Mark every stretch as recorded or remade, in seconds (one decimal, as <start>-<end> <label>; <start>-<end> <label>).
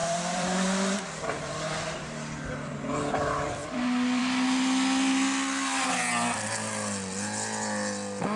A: 0.0-1.5 remade; 1.5-3.6 recorded; 3.6-4.2 remade; 4.2-8.4 recorded